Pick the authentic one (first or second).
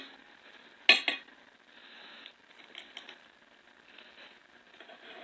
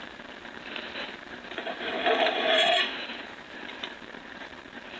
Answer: first